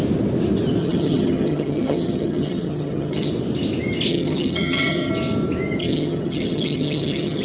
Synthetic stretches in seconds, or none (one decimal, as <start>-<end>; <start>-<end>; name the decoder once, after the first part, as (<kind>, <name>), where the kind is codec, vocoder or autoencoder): 0.8-3.3 (vocoder, HiFi-GAN); 4.1-5.1; 5.8-7.4